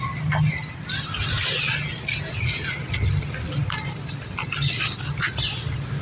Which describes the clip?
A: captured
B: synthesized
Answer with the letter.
A